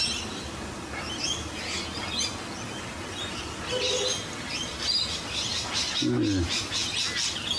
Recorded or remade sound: recorded